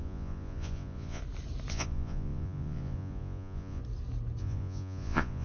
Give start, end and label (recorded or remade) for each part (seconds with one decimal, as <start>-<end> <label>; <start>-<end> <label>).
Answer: 0.0-1.2 remade; 1.2-1.7 recorded; 1.7-3.8 remade; 3.8-4.4 recorded; 4.4-5.4 remade